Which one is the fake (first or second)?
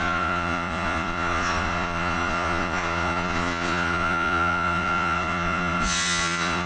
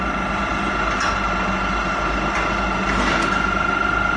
first